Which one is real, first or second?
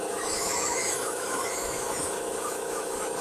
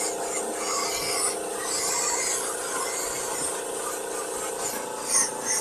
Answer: second